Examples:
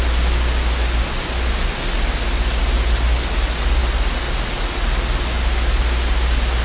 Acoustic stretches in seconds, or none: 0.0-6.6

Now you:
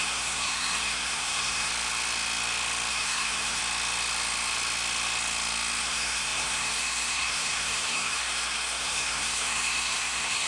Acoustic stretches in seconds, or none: 1.7-2.9; 3.6-5.8

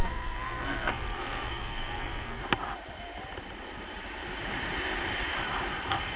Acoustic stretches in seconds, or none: 2.4-6.2

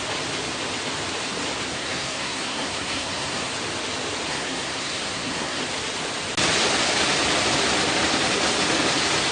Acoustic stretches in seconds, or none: 0.0-1.7; 3.5-4.3; 5.6-9.3

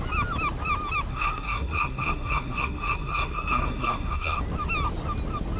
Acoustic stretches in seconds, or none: 0.0-1.1; 4.4-5.6

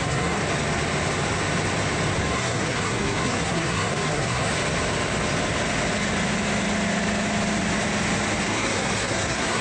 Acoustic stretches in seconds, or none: 0.4-2.2; 4.5-8.4

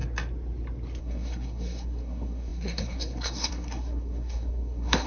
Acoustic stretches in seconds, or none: 0.0-1.0

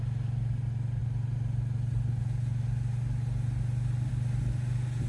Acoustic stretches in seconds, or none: 0.0-5.1